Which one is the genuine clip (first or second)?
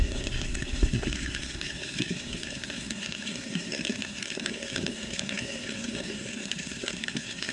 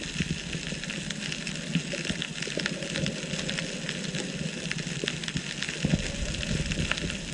second